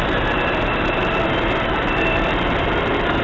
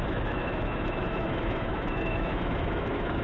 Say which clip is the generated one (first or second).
second